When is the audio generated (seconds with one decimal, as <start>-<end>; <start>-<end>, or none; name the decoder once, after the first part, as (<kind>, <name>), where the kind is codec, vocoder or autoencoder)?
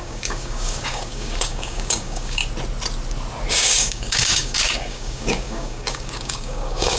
0.0-2.4 (codec, DAC); 3.5-7.0